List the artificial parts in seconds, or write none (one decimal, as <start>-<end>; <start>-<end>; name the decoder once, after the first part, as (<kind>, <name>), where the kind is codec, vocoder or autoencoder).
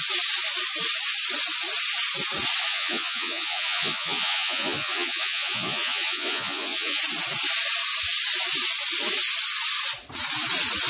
2.7-7.0 (vocoder, Vocos)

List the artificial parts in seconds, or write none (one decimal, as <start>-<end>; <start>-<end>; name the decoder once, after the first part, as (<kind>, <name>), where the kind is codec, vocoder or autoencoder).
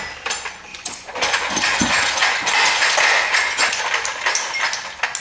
0.7-3.8 (vocoder, Vocos)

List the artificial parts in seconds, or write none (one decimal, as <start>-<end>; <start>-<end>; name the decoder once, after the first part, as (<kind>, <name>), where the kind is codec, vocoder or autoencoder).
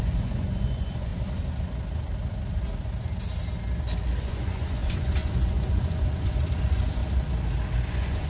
0.0-1.1 (vocoder, Vocos); 4.2-7.0; 7.9-8.3